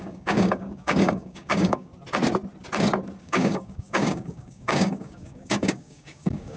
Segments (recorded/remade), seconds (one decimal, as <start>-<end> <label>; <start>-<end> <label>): 0.0-1.9 remade; 1.9-3.2 recorded; 3.2-6.6 remade